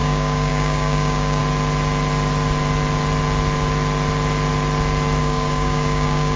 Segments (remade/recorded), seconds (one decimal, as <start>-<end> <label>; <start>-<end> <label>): 0.0-1.4 remade; 1.4-5.2 recorded; 5.2-6.4 remade